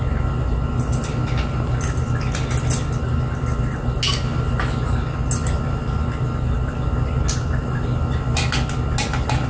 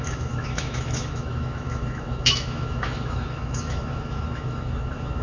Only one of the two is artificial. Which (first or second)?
second